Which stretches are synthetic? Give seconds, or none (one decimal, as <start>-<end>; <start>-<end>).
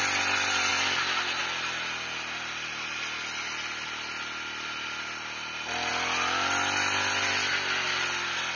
none